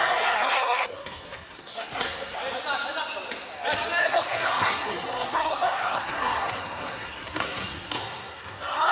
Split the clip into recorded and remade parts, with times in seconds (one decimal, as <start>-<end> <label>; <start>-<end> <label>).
0.0-2.4 remade; 2.4-4.0 recorded; 4.0-8.9 remade